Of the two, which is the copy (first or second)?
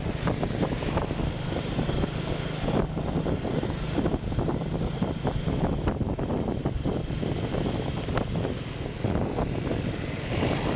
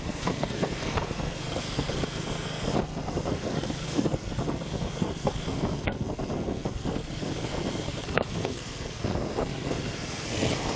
second